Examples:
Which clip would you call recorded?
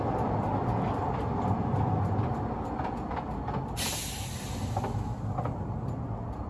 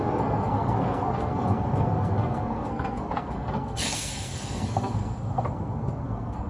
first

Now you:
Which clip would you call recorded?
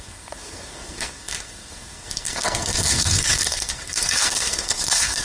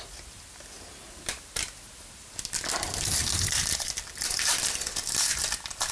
second